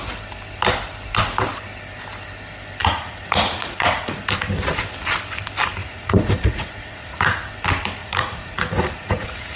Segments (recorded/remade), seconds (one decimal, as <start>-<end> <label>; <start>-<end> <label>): 0.0-2.8 recorded; 2.8-4.2 remade; 4.2-5.8 recorded; 5.8-7.5 remade; 7.5-8.0 recorded; 8.0-9.6 remade